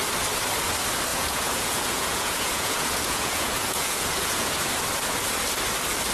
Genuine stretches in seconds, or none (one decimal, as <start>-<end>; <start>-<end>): 0.0-1.1; 4.5-6.1